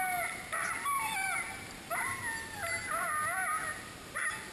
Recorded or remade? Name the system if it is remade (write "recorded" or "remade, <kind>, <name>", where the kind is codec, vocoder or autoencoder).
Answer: recorded